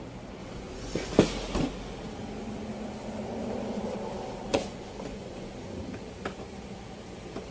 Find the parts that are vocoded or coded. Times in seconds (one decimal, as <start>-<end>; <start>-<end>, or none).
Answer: 0.4-1.1; 4.5-5.8